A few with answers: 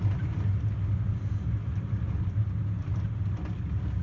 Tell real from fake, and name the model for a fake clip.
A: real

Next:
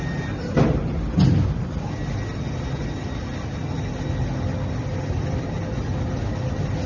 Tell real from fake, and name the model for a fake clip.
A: real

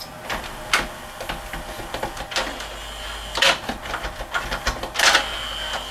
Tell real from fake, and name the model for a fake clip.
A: real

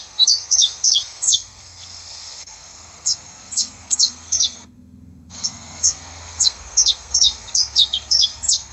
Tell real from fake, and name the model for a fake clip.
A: fake, codec, SNAC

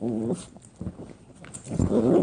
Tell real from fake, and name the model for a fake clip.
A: real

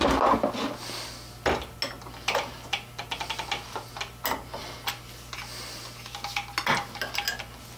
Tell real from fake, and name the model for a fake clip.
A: real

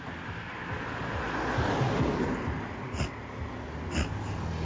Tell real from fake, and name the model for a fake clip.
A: real